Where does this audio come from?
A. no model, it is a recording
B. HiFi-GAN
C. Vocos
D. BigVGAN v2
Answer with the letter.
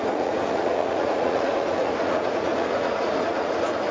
C